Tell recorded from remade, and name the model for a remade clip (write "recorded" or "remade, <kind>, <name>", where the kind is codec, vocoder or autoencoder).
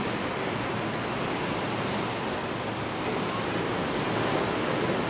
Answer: recorded